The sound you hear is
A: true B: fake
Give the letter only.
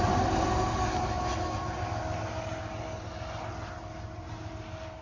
A